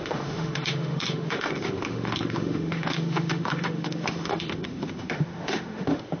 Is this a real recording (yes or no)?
no